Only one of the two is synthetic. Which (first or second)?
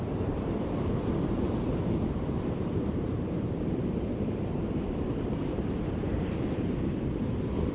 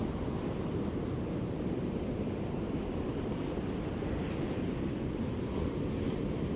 first